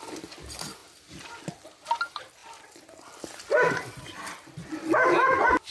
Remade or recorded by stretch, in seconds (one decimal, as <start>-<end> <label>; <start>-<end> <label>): 0.0-5.7 recorded